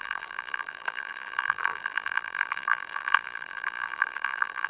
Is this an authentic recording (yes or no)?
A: no